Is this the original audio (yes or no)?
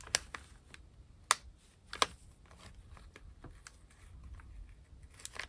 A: yes